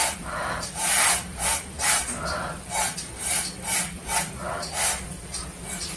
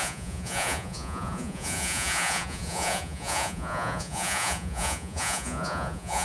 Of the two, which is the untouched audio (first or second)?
first